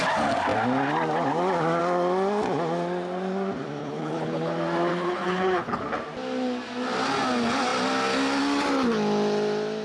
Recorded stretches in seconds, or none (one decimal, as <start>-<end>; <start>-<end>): 0.0-3.8; 4.5-4.9; 5.8-9.8